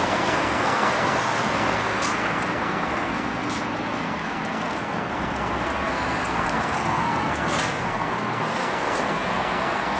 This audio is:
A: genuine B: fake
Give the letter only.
B